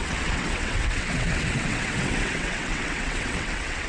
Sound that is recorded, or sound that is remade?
remade